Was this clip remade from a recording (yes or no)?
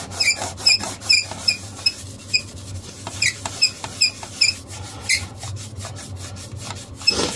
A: no